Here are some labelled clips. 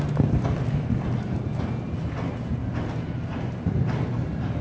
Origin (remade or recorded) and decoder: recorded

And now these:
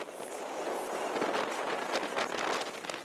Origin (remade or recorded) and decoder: recorded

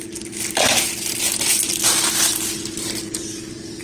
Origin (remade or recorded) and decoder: recorded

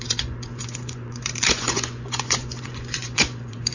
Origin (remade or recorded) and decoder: remade, vocoder, Vocos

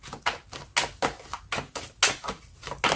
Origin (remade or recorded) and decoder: recorded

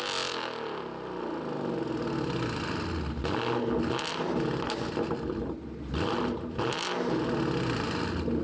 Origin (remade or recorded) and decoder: recorded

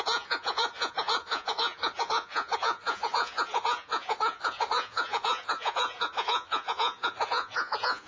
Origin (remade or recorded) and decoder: remade, vocoder, Vocos